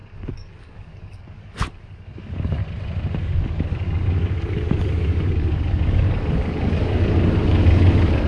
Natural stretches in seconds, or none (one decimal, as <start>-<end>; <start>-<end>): 2.6-3.2